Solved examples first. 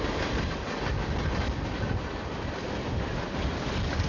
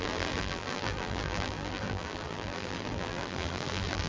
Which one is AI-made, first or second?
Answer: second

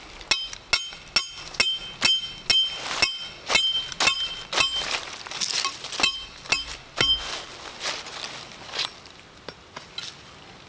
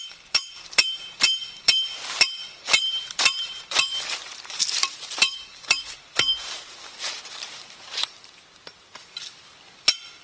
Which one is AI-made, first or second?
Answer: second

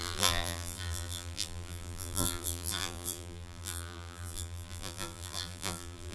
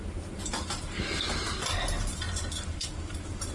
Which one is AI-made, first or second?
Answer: first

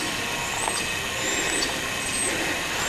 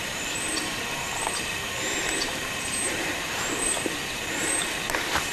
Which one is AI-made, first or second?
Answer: second